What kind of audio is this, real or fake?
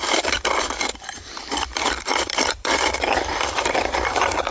fake